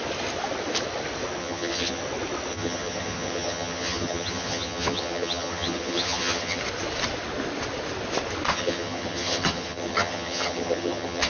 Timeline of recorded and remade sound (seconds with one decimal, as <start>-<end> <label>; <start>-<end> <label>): 0.0-1.4 recorded; 1.4-2.0 remade; 2.0-2.5 recorded; 2.5-6.6 remade; 6.6-8.5 recorded; 8.5-11.3 remade